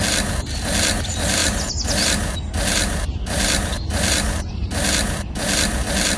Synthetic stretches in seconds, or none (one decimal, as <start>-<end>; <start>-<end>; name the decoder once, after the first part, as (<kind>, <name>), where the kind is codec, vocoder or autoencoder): none

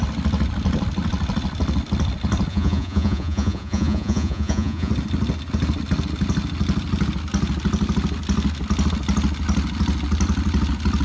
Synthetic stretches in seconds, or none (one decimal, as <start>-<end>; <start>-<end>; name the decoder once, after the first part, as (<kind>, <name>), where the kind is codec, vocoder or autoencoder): 2.5-4.9 (vocoder, Vocos)